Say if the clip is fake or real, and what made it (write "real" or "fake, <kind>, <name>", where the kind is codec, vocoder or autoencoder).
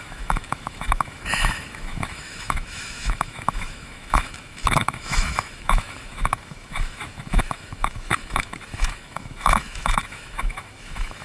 fake, autoencoder, DAC-VAE